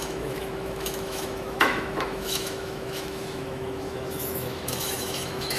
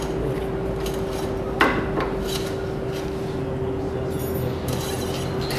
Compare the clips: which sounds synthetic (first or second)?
first